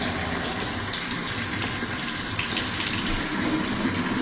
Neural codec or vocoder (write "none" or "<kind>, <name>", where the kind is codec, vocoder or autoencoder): none